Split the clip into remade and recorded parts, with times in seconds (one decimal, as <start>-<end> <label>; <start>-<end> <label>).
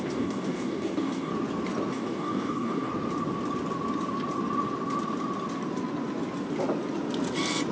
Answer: 0.0-1.3 remade; 1.3-1.9 recorded; 1.9-2.9 remade; 2.9-7.7 recorded